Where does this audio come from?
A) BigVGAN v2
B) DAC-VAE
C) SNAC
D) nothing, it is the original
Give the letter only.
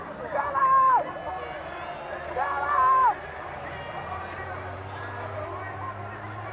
D